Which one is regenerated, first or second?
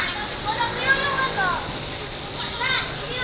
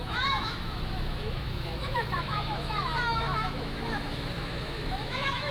second